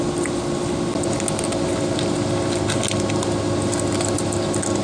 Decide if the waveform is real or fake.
real